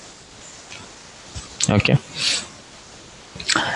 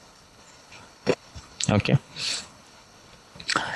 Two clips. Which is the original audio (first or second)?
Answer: first